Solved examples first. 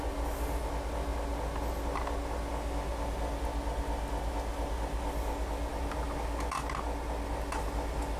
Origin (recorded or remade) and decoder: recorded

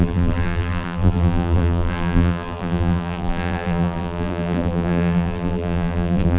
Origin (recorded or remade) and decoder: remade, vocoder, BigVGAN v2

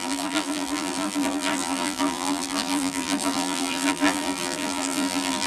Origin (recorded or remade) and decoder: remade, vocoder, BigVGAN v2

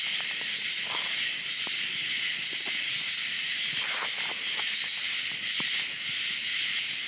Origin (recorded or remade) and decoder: recorded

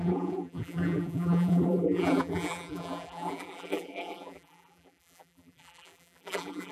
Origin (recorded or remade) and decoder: remade, vocoder, BigVGAN v2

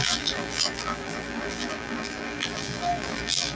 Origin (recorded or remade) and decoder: remade, vocoder, BigVGAN v2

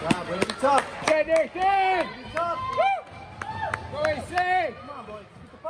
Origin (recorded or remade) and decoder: recorded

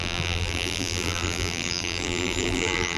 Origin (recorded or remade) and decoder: remade, vocoder, BigVGAN v2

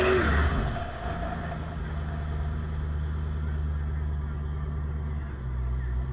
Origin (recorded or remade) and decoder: recorded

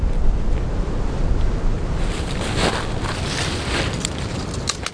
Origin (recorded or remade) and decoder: recorded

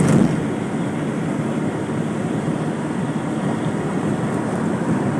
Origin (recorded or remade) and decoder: recorded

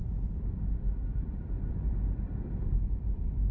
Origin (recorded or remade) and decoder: remade, vocoder, BigVGAN v2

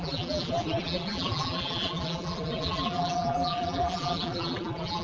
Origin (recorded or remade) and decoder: remade, vocoder, BigVGAN v2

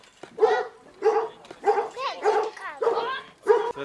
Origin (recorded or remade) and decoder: recorded